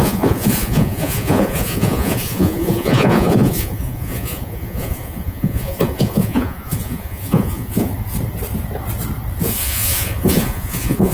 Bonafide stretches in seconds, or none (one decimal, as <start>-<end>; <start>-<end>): 7.9-9.4